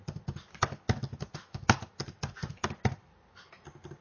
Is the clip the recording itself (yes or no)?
yes